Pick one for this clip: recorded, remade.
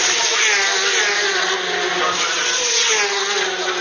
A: recorded